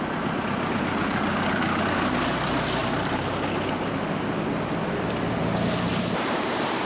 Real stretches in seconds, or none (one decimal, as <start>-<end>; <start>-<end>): 0.0-2.8; 3.3-5.9